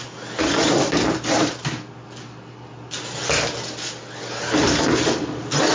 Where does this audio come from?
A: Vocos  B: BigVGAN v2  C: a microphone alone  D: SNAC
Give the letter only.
C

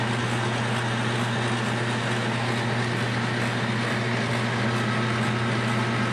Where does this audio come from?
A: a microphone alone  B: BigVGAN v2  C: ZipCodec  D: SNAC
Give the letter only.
A